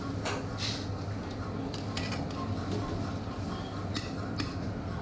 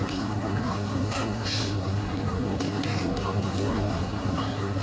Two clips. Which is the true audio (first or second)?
first